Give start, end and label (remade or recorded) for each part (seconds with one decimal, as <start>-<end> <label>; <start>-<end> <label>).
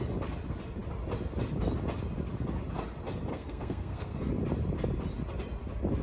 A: 0.0-3.3 recorded; 3.3-4.3 remade; 4.3-6.0 recorded